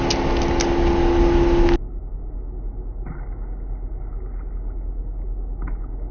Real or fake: real